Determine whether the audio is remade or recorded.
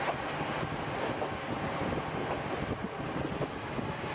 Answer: recorded